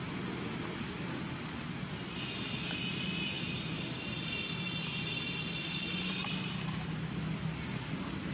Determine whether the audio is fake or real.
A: real